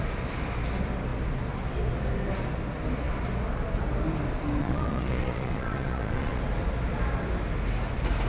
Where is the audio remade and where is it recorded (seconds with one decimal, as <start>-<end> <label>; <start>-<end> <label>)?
0.0-4.6 recorded; 4.6-6.4 remade; 6.4-8.3 recorded